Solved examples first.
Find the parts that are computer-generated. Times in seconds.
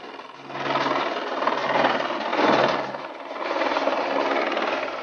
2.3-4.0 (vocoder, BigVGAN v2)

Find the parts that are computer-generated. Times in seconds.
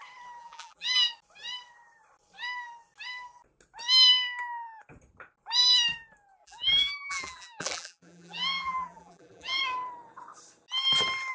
0.4-1.1 (vocoder, BigVGAN v2); 6.4-9.6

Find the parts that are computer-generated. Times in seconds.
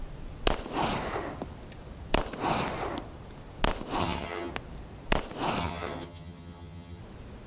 4.0-4.5 (vocoder, HiFi-GAN); 5.6-7.0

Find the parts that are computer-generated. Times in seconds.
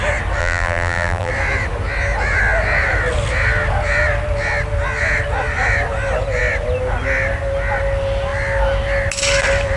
0.4-1.3 (vocoder, BigVGAN v2)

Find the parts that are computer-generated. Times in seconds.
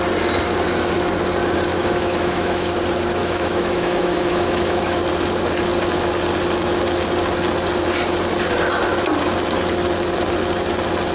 1.7-2.7 (autoencoder, DAC-VAE); 3.2-5.0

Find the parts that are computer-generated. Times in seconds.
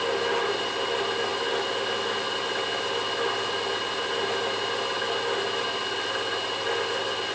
none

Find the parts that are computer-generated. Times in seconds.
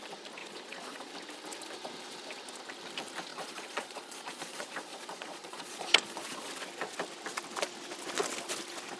0.4-1.1 (vocoder, Vocos); 3.3-6.5